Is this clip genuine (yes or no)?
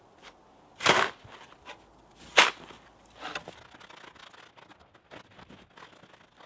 yes